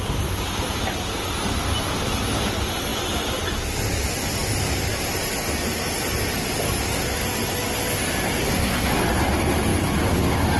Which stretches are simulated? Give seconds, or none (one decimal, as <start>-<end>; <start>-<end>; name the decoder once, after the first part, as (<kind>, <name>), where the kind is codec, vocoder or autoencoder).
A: 8.4-9.0 (codec, SNAC)